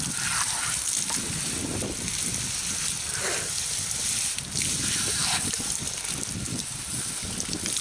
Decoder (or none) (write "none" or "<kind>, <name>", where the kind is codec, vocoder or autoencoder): none